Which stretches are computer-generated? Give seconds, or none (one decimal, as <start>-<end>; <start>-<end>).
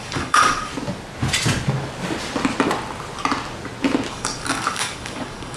0.0-0.7; 4.1-5.6